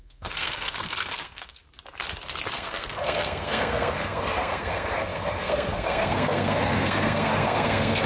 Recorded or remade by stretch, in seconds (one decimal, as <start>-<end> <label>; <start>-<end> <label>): 0.0-1.6 remade; 1.6-2.5 recorded; 2.5-8.1 remade